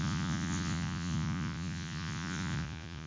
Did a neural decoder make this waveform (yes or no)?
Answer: yes